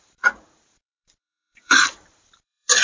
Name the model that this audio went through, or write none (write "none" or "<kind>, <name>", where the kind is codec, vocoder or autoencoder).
vocoder, BigVGAN v2